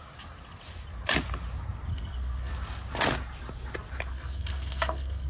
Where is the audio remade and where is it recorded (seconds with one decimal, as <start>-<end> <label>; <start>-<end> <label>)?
0.0-1.9 recorded; 1.9-2.5 remade; 2.5-4.1 recorded; 4.1-5.3 remade